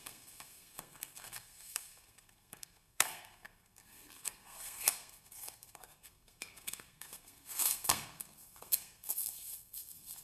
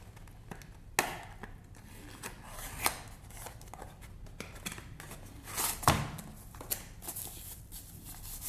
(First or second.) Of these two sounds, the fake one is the first